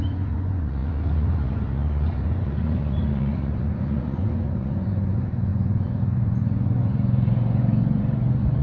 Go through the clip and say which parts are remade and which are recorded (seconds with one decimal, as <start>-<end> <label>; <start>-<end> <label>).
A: 0.0-8.6 remade